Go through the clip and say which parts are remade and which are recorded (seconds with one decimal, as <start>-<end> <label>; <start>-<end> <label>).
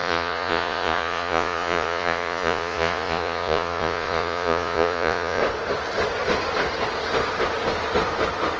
0.0-5.4 remade; 5.4-8.6 recorded